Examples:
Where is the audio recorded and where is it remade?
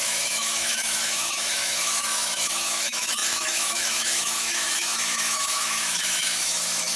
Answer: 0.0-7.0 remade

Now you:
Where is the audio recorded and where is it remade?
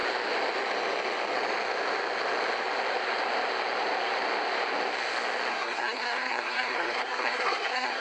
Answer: 0.0-5.5 recorded; 5.5-8.0 remade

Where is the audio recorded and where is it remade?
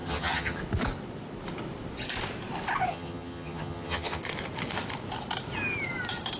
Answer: 0.0-0.6 remade; 0.6-2.9 recorded; 2.9-4.2 remade; 4.2-6.4 recorded